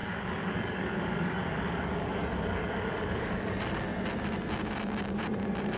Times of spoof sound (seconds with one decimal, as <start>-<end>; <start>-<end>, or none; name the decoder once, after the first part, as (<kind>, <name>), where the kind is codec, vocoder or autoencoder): 0.0-3.5 (codec, DAC)